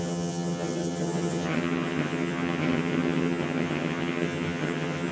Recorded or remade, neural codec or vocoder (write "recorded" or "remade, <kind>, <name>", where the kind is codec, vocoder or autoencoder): remade, vocoder, HiFi-GAN